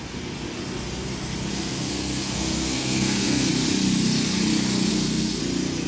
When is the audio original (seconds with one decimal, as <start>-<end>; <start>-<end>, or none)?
0.0-1.5; 3.5-4.9; 5.4-5.9